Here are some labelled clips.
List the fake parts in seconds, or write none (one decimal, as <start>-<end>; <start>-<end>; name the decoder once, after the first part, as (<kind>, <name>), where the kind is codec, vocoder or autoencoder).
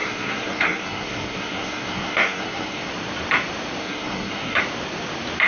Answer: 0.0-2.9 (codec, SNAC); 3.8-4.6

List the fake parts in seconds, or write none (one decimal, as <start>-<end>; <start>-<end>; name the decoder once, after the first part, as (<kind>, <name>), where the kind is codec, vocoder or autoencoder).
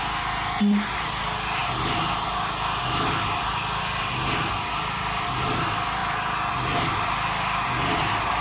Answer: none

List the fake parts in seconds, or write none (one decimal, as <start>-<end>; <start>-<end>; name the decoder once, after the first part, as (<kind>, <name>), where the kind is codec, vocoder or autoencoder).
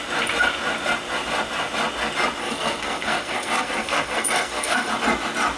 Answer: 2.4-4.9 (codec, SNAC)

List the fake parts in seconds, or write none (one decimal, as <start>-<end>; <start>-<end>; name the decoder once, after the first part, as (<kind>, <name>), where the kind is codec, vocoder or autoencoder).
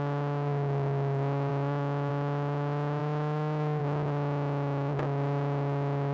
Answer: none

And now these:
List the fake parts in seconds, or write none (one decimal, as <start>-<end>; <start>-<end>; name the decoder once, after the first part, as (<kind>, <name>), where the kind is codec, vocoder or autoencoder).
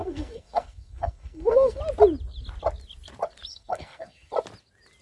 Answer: 0.0-1.8 (codec, SNAC); 3.5-4.3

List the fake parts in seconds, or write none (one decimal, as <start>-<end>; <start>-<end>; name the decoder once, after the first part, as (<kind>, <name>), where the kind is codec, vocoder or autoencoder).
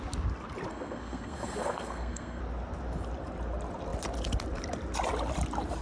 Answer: 0.7-2.4 (codec, SNAC)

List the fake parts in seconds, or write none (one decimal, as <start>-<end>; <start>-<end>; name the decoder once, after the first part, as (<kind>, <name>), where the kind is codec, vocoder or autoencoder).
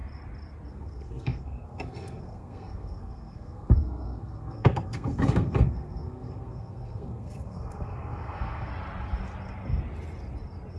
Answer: 0.7-8.7 (codec, SNAC)